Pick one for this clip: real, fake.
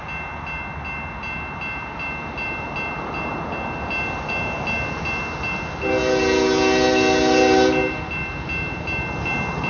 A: real